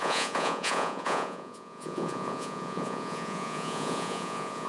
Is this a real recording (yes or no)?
no